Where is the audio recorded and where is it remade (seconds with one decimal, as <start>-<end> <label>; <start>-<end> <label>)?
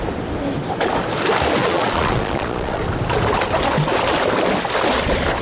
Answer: 0.0-1.6 recorded; 1.6-2.8 remade; 2.8-5.4 recorded